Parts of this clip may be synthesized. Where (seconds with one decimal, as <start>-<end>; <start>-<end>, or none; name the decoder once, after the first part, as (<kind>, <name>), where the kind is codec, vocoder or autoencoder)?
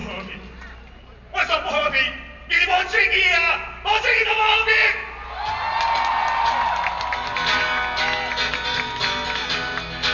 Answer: none